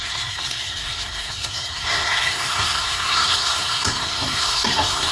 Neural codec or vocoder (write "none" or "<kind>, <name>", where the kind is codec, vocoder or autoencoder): codec, SNAC